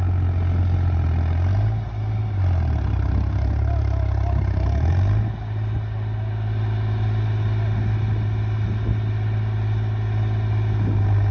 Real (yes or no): yes